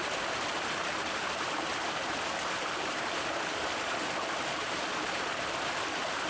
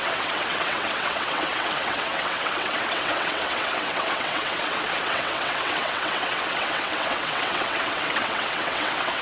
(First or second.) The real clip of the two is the first